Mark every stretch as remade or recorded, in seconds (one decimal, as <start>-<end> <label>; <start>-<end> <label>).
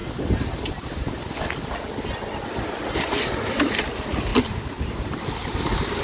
0.0-1.7 remade; 1.7-4.3 recorded; 4.3-5.1 remade; 5.1-6.0 recorded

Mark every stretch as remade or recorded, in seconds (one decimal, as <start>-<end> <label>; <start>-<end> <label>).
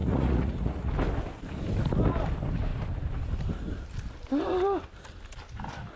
0.0-0.9 remade; 0.9-6.0 recorded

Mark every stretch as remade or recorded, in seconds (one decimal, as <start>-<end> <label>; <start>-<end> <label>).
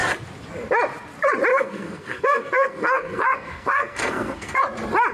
0.0-1.5 recorded; 1.5-4.6 remade; 4.6-5.1 recorded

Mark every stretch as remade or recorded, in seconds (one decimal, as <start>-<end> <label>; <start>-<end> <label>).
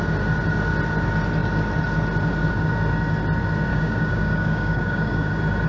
0.0-3.7 recorded; 3.7-5.3 remade; 5.3-5.7 recorded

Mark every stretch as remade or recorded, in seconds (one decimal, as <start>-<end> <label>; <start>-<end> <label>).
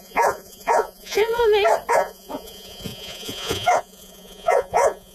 0.0-1.4 remade; 1.4-1.9 recorded; 1.9-5.1 remade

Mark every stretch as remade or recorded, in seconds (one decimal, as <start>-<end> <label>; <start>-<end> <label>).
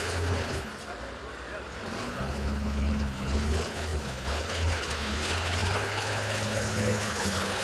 0.0-0.7 remade; 0.7-2.0 recorded; 2.0-7.6 remade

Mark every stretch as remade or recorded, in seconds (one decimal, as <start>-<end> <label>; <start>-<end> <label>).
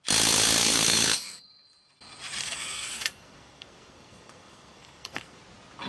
0.0-0.6 recorded; 0.6-1.4 remade; 1.4-2.4 recorded; 2.4-5.4 remade; 5.4-5.9 recorded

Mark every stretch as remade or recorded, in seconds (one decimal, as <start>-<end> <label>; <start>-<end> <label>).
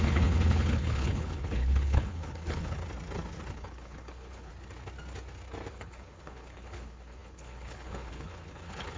0.0-2.8 remade; 2.8-3.5 recorded; 3.5-4.5 remade; 4.5-5.7 recorded; 5.7-9.0 remade